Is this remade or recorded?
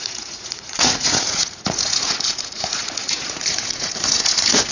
remade